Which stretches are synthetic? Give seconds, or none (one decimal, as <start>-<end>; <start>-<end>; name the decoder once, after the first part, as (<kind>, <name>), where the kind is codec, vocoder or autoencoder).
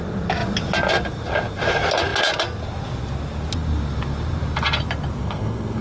5.2-5.8 (codec, SNAC)